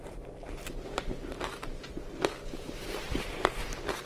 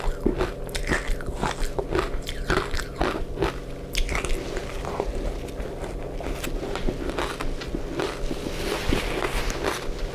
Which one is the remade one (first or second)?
first